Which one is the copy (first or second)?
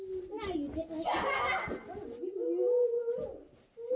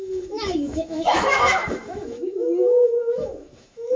second